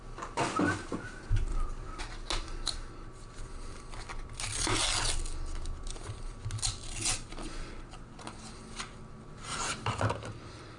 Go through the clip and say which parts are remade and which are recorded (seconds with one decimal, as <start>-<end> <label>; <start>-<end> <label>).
0.0-1.5 recorded; 1.5-2.0 remade; 2.0-9.5 recorded; 9.5-10.0 remade; 10.0-10.8 recorded